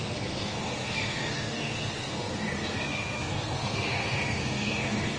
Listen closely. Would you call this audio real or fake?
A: fake